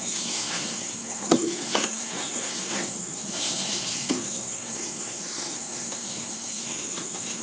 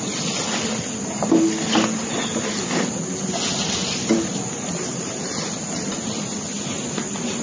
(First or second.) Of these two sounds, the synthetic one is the first